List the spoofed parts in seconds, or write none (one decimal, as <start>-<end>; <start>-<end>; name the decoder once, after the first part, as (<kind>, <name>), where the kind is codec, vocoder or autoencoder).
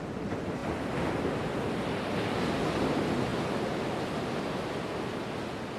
none